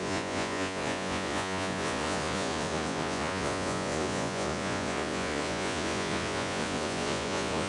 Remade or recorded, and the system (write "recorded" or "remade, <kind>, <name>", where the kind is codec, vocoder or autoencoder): remade, vocoder, Vocos